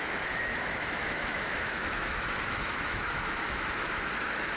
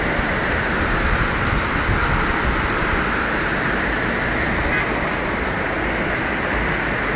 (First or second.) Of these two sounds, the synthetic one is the first